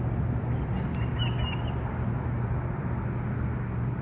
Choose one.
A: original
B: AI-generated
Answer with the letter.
A